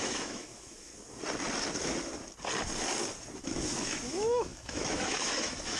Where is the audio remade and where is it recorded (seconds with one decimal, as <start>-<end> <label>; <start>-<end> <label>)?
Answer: 0.0-0.9 remade; 0.9-3.4 recorded; 3.4-5.8 remade